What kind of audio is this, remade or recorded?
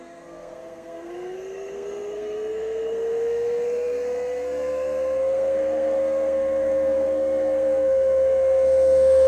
remade